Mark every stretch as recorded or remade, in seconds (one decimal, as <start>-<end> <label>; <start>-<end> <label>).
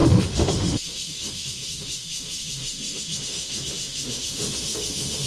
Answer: 0.0-5.3 remade